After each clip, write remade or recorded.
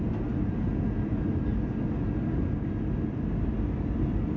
recorded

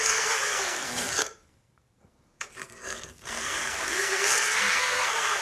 remade